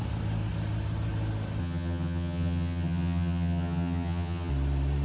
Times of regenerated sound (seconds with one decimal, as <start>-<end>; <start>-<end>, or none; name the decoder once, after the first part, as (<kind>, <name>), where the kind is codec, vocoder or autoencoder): 1.6-4.5 (vocoder, HiFi-GAN)